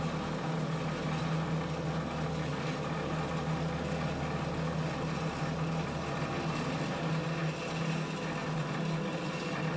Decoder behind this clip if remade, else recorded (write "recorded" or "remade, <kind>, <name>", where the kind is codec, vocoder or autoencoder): recorded